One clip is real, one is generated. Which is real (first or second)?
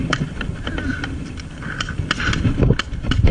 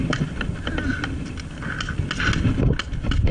second